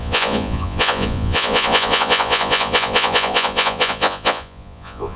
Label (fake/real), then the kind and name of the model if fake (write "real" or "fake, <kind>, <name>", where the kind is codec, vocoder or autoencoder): fake, vocoder, Vocos